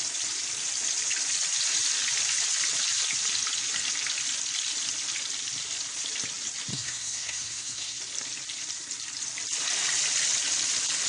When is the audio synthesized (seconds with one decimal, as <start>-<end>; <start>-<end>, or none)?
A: 6.7-8.0

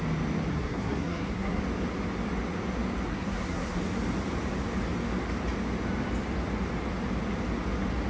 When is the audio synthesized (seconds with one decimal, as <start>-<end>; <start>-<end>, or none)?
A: 0.5-1.6; 3.1-3.8

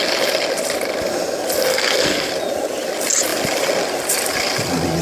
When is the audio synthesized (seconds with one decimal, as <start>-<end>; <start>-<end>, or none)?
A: 1.7-2.3

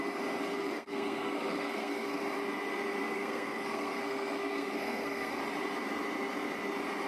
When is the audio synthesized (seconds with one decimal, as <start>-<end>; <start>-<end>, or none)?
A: 0.4-2.2; 3.0-5.3